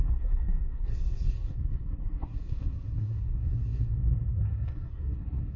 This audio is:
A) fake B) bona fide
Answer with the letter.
A